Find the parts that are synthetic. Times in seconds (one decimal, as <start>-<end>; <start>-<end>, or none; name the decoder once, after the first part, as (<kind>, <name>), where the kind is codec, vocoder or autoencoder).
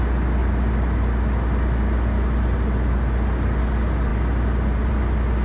4.1-4.9 (vocoder, BigVGAN v2)